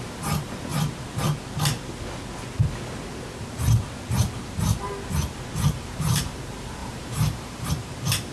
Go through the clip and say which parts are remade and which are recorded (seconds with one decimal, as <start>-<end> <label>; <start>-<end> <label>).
0.0-0.7 remade; 0.7-5.6 recorded; 5.6-8.3 remade